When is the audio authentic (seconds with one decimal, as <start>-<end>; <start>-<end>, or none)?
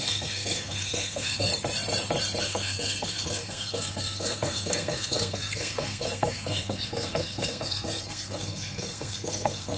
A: 1.5-2.4